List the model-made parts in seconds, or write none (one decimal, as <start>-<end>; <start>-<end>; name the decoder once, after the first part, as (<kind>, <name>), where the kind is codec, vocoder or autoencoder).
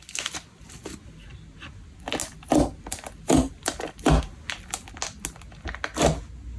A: 2.2-4.2 (vocoder, BigVGAN v2)